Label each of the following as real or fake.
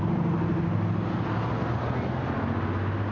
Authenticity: real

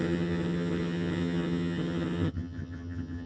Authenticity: fake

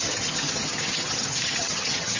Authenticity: fake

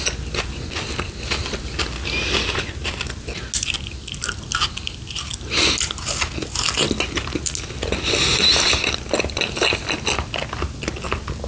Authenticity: real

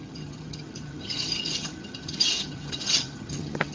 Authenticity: fake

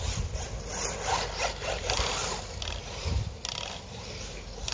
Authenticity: real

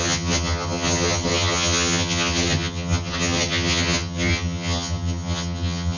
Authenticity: fake